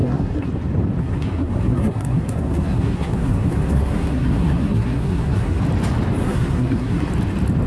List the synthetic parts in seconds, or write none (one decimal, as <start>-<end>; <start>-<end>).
0.0-0.5; 1.0-5.6; 6.2-7.1